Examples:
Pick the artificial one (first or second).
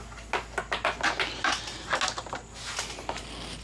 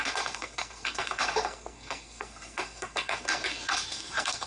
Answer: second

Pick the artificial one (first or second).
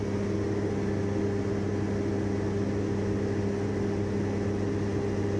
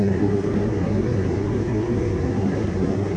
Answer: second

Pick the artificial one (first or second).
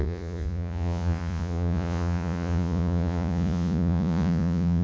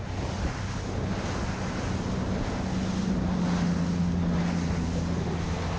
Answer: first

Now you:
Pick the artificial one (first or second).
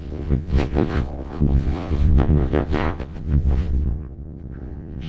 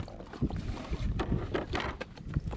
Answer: first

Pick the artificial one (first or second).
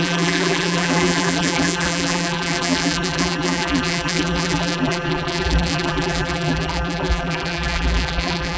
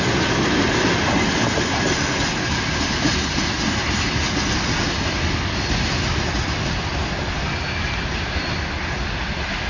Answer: first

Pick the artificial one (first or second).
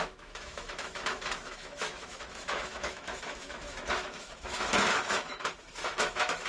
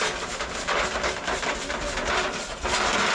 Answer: first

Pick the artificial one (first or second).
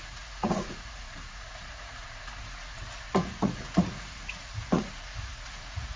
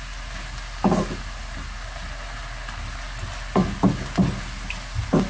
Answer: first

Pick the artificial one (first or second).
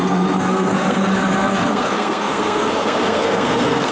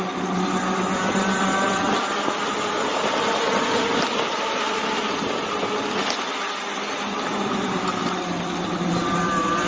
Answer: first